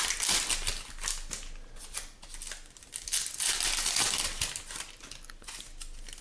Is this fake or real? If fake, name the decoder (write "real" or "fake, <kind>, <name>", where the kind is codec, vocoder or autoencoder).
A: real